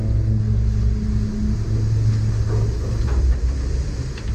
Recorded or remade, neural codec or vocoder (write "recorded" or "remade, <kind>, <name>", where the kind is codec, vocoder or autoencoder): recorded